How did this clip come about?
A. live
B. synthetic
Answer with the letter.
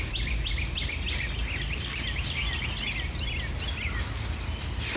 A